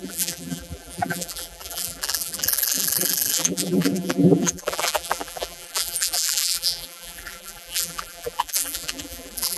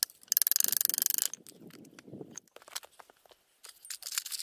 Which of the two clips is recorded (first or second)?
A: second